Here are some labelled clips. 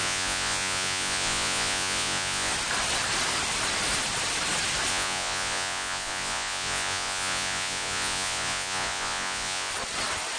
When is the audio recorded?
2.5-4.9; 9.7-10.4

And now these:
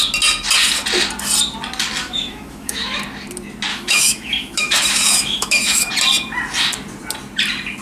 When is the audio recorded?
0.0-2.0; 3.0-3.7; 5.9-7.8

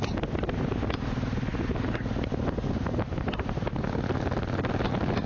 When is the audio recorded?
0.0-5.3

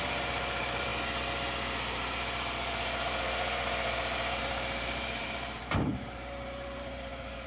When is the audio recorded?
0.9-4.4